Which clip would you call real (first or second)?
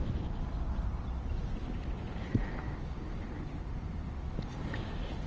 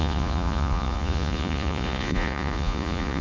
first